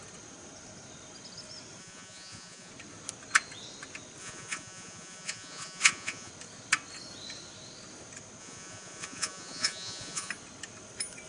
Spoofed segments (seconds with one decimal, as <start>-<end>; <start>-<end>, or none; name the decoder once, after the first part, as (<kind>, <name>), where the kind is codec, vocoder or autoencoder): 1.8-2.7 (vocoder, Vocos); 4.2-6.3; 8.4-10.3